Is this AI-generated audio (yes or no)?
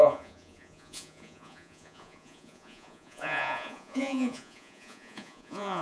yes